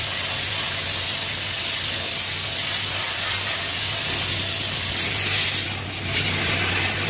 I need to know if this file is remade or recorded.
recorded